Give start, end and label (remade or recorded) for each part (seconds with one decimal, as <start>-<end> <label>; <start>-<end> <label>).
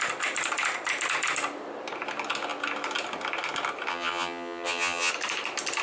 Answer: 0.0-3.9 recorded; 3.9-5.1 remade; 5.1-5.8 recorded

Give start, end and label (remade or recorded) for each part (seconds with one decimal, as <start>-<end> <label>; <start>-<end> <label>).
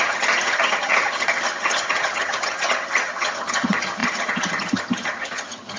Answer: 0.0-5.8 remade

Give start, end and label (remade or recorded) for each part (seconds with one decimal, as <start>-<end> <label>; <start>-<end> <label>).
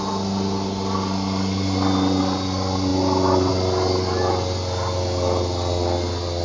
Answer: 0.0-6.4 recorded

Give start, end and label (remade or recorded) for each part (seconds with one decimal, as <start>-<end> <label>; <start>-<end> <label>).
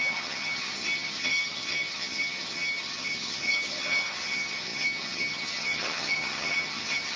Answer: 0.0-7.2 remade